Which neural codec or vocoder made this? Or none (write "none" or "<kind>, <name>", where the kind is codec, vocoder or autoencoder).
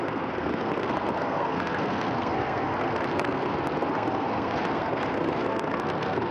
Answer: codec, SNAC